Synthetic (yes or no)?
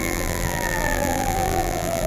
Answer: yes